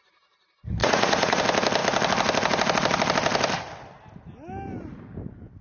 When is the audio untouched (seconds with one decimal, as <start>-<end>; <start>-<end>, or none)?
0.0-0.8; 1.4-5.6